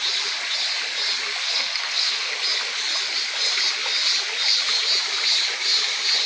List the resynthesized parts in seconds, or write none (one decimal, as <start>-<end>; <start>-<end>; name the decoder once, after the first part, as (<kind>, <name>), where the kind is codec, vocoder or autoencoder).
1.4-2.3 (codec, SNAC)